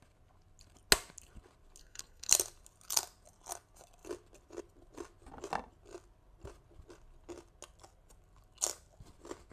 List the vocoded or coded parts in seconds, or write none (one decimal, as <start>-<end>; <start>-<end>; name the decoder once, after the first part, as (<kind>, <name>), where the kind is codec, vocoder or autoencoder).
1.8-2.3 (codec, SNAC)